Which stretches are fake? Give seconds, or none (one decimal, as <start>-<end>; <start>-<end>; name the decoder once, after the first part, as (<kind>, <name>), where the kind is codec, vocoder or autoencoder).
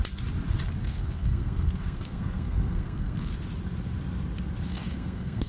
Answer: 0.8-3.4 (codec, SNAC); 4.7-5.5